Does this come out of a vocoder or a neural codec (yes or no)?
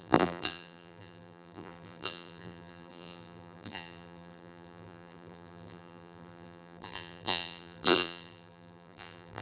yes